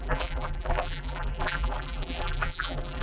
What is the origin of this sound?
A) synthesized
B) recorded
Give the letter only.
A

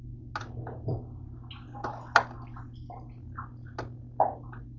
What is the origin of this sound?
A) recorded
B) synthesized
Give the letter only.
A